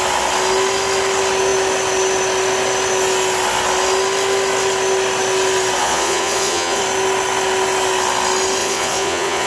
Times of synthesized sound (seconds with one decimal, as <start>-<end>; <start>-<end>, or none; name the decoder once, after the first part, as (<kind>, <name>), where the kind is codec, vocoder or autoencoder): 5.8-6.8 (vocoder, Vocos); 8.6-9.5